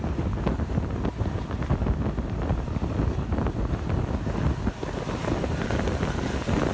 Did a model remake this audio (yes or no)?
no